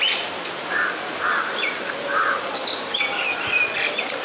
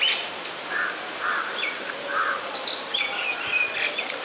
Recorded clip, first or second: first